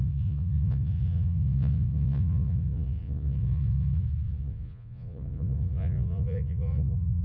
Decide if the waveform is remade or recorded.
remade